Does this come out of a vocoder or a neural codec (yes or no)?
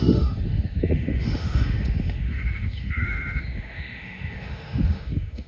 yes